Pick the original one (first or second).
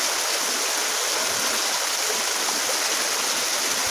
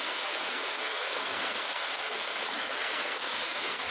first